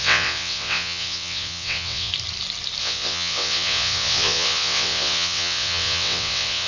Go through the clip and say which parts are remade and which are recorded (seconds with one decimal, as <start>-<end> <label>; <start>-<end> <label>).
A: 0.0-2.1 remade; 2.1-2.8 recorded; 2.8-6.7 remade